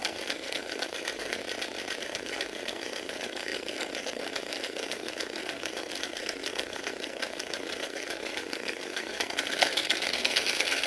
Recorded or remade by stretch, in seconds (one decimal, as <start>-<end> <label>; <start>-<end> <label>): 0.0-1.4 remade; 1.4-2.0 recorded; 2.0-10.9 remade